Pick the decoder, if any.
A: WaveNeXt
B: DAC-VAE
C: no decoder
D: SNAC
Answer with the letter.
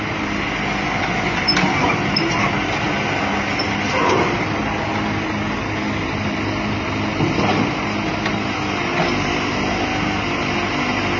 C